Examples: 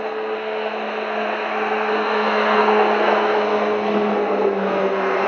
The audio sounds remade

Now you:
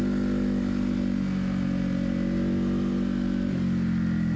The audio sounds recorded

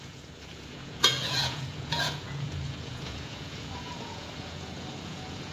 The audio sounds remade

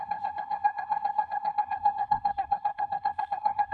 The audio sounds remade